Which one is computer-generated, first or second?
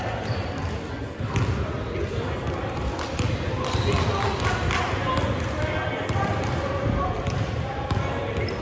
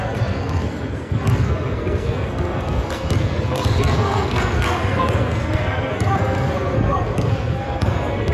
second